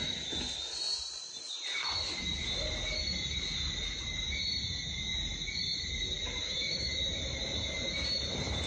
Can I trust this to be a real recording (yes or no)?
yes